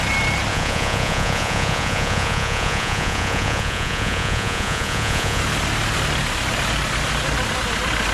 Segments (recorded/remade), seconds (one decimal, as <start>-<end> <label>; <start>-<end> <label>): 0.0-0.5 recorded; 0.5-5.4 remade; 5.4-8.1 recorded